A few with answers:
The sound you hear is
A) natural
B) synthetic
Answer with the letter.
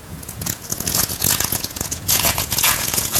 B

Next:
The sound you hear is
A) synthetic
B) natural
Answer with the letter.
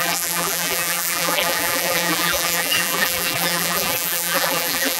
A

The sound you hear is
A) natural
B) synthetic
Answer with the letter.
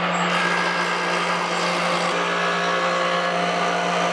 A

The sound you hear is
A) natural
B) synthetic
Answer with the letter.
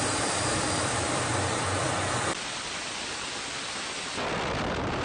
B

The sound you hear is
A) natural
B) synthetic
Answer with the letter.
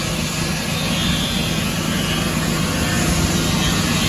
A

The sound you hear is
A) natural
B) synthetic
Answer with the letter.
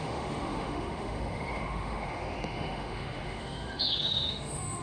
B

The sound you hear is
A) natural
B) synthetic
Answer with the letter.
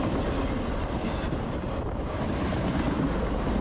A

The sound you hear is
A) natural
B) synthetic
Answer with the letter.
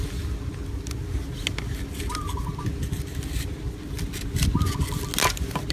A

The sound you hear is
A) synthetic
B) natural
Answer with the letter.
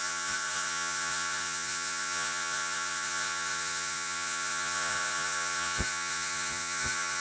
A